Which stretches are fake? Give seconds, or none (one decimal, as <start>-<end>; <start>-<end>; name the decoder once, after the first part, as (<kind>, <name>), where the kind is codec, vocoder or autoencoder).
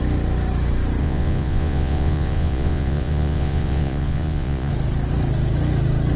1.0-4.7 (vocoder, Vocos)